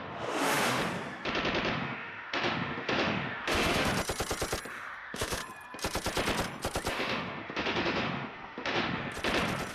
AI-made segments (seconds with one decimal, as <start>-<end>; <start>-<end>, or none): 0.0-0.8; 1.7-3.9; 4.7-5.4; 6.9-9.0